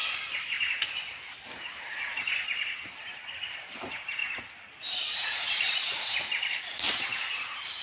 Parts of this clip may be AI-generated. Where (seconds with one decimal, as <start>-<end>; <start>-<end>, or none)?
2.9-4.2; 4.8-7.8

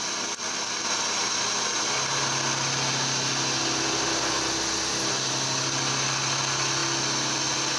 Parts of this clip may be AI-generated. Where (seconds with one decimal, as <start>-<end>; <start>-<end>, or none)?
none

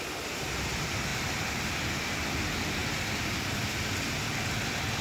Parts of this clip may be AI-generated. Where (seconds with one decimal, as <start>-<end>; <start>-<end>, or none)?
none

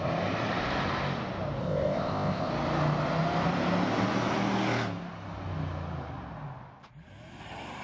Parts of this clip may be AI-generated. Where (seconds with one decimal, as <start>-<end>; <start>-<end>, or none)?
1.6-2.5

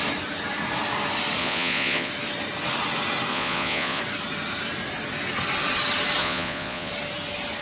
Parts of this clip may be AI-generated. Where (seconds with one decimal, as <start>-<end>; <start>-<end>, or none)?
1.4-2.1; 3.3-4.0; 6.2-6.9

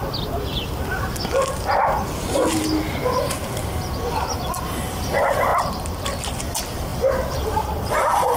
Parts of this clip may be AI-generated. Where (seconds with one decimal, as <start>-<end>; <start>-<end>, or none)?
6.9-8.4

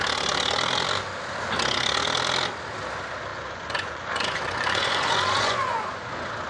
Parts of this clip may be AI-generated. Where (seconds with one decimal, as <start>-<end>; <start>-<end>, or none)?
3.3-6.0